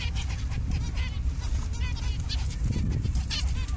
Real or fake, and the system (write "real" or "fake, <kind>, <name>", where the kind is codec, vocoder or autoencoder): real